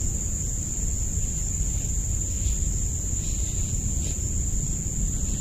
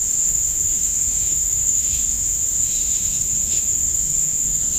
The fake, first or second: second